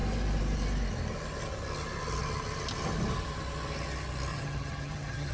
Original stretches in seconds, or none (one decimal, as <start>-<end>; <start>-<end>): 0.0-4.3